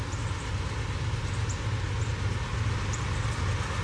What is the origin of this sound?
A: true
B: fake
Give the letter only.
A